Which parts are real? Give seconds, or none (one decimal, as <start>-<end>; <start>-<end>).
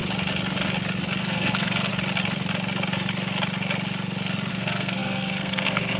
0.0-1.2; 1.9-4.5